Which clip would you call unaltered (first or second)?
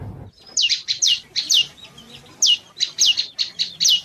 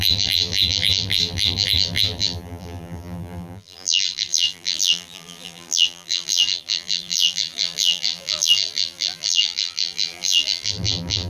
first